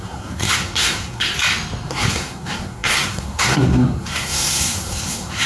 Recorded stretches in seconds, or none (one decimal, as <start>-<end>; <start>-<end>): 1.3-1.9